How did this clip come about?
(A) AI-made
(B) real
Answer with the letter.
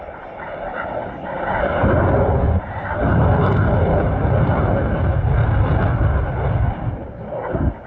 B